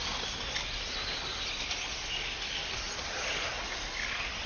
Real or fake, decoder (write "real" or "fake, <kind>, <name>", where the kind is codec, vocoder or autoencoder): real